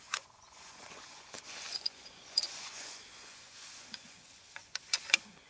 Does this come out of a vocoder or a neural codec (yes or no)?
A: yes